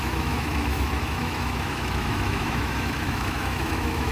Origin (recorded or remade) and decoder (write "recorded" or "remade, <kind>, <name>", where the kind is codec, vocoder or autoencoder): remade, autoencoder, DAC-VAE